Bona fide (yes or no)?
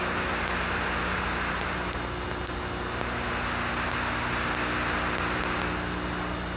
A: yes